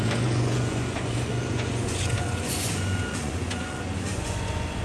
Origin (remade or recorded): remade